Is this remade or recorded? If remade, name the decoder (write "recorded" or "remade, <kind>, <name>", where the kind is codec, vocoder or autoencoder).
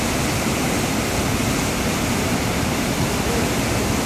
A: recorded